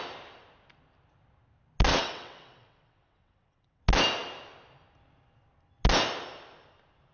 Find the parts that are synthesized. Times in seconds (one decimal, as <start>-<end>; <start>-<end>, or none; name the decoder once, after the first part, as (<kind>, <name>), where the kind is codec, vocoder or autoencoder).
1.9-3.8 (vocoder, WaveNeXt)